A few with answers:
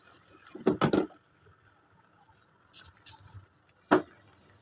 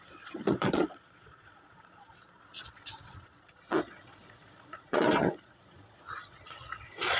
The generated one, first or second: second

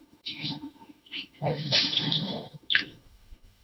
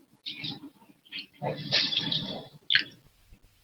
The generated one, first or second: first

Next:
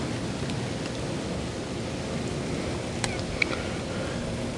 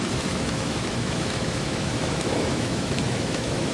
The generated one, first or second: second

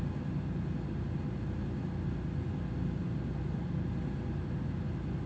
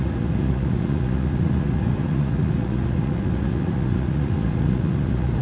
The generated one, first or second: second